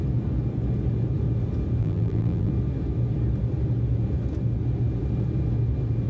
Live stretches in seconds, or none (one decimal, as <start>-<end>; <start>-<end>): 0.0-1.8; 2.5-6.1